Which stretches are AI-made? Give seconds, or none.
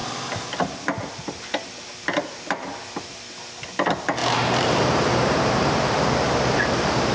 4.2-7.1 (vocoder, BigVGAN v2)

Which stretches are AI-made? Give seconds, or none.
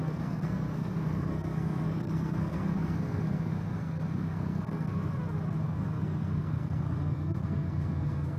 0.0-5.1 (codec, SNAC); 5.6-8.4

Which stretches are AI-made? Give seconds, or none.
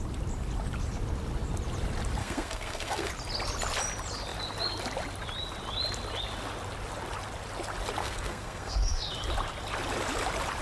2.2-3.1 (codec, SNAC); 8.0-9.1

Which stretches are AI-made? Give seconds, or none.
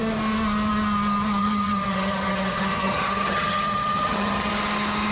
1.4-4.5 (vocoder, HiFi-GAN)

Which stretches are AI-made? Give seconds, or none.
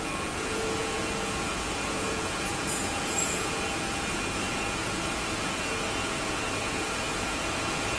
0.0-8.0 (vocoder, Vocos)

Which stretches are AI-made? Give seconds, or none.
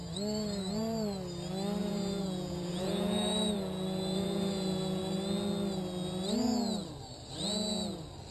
1.8-5.0 (vocoder, Vocos)